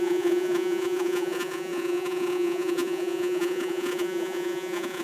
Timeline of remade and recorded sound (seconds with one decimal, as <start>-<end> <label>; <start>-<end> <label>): 0.0-5.0 remade

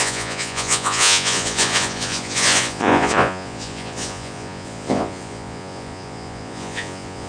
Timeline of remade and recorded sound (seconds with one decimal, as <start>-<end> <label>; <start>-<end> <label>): 0.0-7.3 remade